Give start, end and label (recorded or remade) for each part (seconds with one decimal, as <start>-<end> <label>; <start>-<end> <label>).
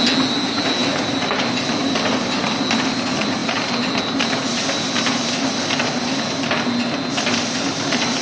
0.0-8.2 recorded